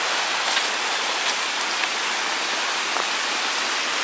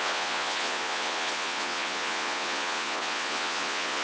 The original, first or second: first